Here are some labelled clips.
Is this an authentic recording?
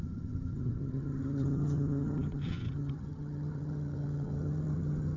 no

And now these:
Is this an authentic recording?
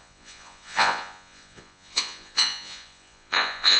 no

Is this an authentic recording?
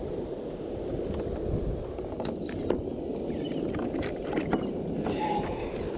yes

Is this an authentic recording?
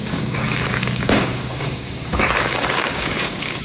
no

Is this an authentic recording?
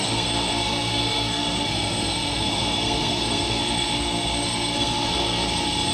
no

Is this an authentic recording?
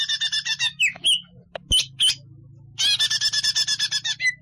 yes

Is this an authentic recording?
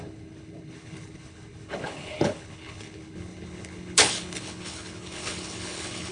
no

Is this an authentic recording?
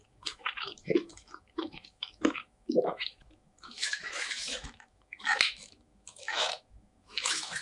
no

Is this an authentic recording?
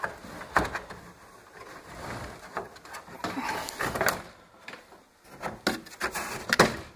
yes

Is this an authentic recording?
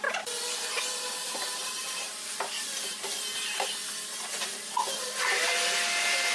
yes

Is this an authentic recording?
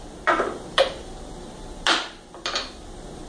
yes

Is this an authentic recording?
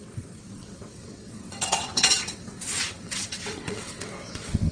no